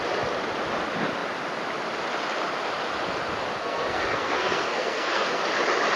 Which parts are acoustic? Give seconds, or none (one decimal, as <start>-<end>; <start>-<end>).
0.0-3.6; 5.4-6.0